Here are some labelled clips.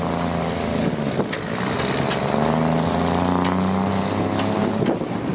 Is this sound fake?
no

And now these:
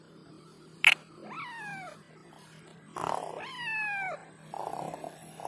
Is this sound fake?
no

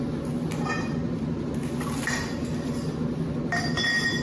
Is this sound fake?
no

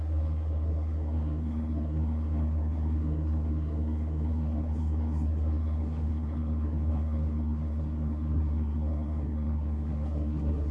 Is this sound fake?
yes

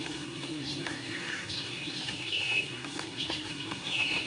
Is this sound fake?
yes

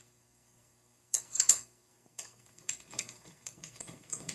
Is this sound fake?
yes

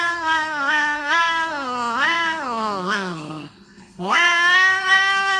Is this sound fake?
yes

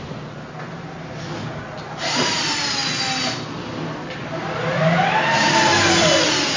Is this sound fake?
no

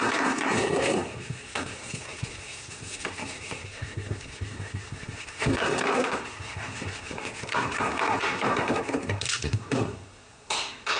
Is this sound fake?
yes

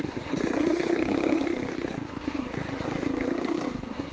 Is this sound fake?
yes